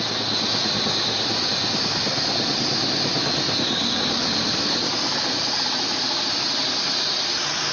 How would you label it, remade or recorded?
recorded